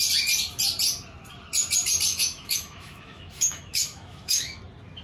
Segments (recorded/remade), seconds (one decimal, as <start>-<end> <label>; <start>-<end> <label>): 0.0-2.1 recorded; 2.1-4.6 remade; 4.6-5.0 recorded